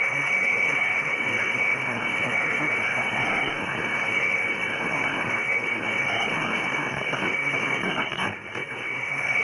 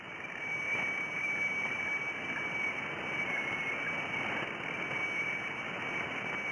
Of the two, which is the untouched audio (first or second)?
second